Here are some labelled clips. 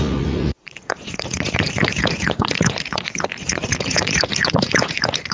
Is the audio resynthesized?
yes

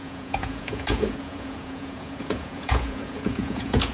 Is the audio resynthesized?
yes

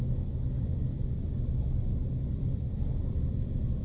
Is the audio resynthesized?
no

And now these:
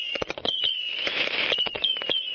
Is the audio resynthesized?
yes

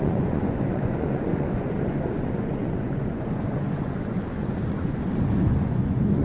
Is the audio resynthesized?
yes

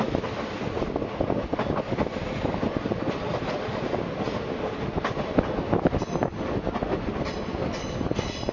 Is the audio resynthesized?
no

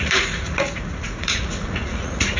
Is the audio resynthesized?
yes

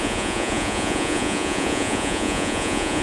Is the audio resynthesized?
yes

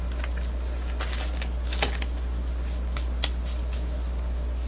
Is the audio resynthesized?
no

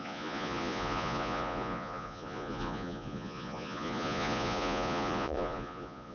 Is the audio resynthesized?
yes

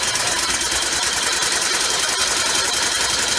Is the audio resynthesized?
no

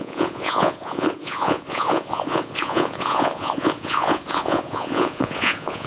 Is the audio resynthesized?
yes